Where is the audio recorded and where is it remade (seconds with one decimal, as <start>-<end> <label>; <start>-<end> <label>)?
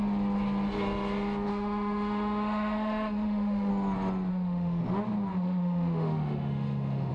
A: 0.0-1.5 recorded; 1.5-3.7 remade; 3.7-4.3 recorded; 4.3-4.8 remade; 4.8-5.3 recorded; 5.3-7.1 remade